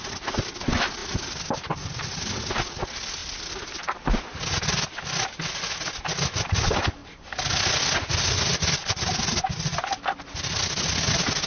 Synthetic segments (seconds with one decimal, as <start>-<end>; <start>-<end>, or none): none